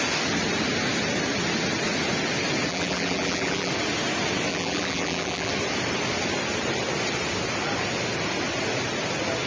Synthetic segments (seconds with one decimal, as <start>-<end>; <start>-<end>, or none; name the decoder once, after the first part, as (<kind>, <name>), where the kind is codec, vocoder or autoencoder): 2.7-3.7 (vocoder, BigVGAN v2); 4.5-5.5